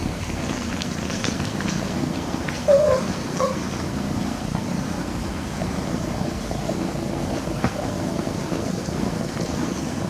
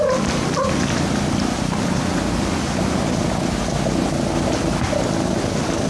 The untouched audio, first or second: second